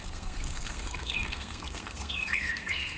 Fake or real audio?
fake